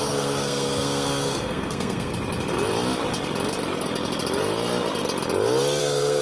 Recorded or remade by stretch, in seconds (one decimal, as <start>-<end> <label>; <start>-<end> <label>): 0.0-2.1 remade; 2.1-5.8 recorded; 5.8-6.2 remade